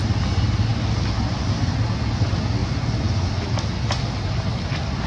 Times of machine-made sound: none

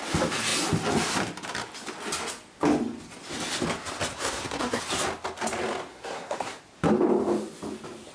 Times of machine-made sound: 4.1-4.8 (codec, SNAC); 5.9-6.6

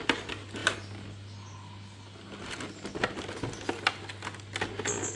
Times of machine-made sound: none

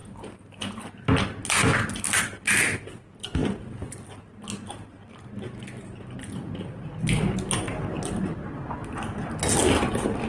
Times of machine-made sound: none